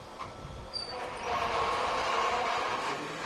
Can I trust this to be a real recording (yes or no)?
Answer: yes